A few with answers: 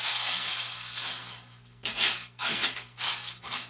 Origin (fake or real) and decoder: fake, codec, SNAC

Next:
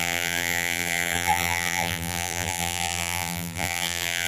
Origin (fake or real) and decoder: fake, vocoder, BigVGAN v2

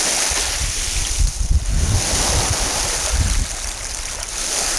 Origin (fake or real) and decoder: real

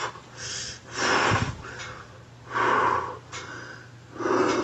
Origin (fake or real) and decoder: real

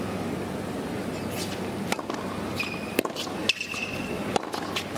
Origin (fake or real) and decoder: real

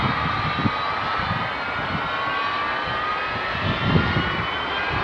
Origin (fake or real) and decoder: real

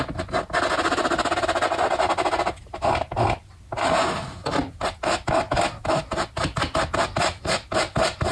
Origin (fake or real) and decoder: real